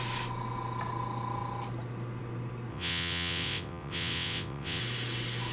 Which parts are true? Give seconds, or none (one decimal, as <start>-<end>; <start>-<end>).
0.0-2.7; 4.8-5.5